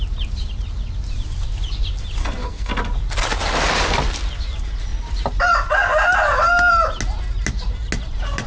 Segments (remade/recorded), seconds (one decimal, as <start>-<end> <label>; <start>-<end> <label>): 0.0-2.2 recorded; 2.2-2.7 remade; 2.7-8.5 recorded